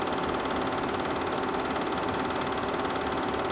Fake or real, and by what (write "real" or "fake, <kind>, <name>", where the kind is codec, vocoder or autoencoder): real